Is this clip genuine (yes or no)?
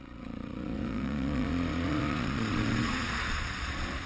no